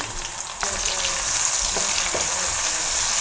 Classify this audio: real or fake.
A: real